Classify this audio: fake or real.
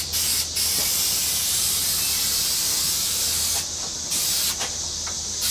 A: real